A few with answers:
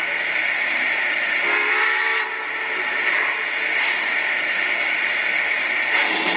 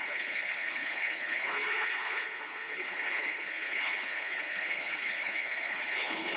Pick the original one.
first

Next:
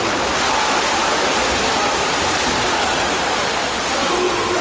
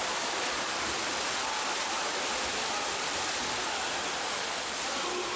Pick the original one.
first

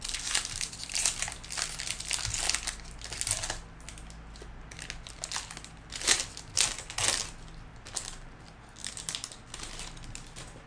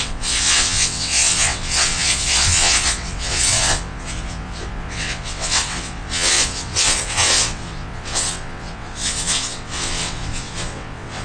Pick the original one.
first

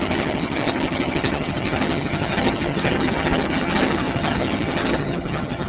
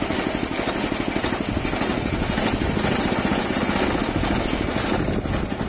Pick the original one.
second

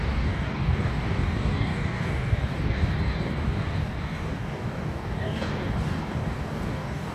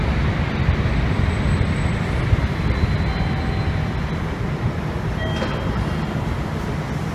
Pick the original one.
second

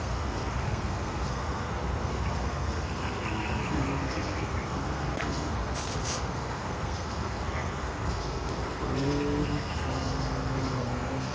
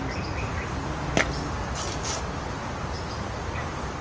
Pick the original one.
second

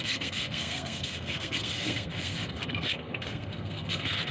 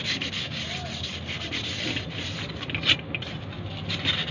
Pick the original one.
second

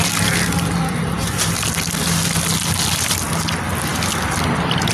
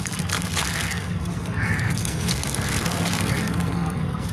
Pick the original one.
first